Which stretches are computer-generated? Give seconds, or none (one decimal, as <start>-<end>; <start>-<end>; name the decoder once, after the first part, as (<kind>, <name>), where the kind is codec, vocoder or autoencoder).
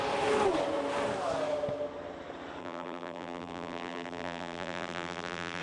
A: 2.6-5.6 (vocoder, BigVGAN v2)